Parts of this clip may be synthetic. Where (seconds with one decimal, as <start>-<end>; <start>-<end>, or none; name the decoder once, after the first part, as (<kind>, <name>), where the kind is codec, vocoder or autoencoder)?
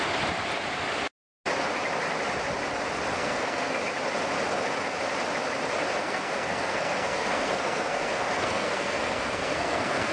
3.1-3.8 (codec, SNAC); 6.0-10.1